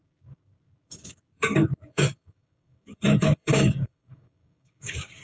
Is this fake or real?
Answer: fake